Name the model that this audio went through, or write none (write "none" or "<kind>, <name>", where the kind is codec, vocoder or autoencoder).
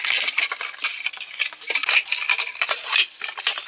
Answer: none